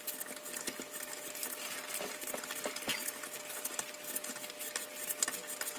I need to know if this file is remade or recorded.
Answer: recorded